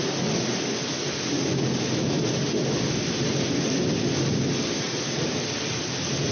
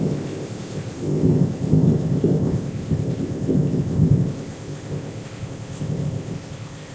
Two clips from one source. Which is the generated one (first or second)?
second